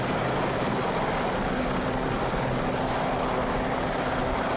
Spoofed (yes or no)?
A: no